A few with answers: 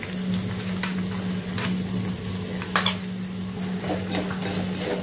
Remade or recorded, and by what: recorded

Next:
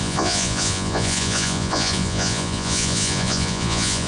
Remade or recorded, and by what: remade, vocoder, Vocos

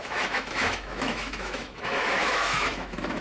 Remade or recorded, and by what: remade, autoencoder, DAC-VAE